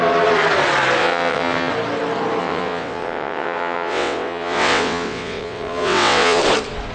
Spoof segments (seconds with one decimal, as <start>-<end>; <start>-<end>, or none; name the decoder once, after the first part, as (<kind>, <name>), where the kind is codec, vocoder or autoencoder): 1.0-1.7 (vocoder, WaveNeXt); 2.4-6.4